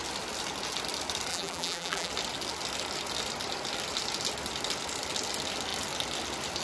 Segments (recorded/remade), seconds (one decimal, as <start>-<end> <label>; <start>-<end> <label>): 0.0-1.3 recorded; 1.3-2.1 remade; 2.1-6.6 recorded